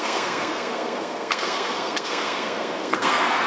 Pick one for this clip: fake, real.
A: fake